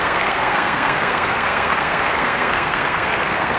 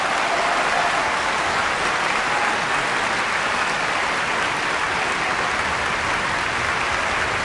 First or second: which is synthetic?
first